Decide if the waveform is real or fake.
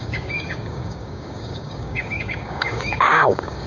fake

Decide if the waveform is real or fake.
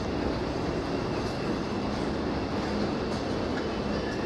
real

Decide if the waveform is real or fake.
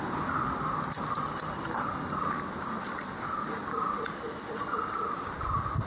real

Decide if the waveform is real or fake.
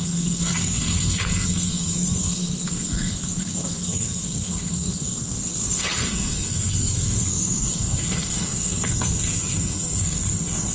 fake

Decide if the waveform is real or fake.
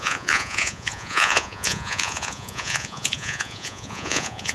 fake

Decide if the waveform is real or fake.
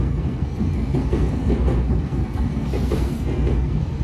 fake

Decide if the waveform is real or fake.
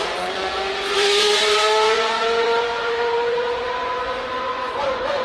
fake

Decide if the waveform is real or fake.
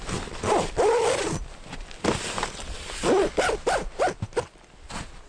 real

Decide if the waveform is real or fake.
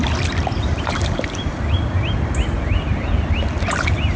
real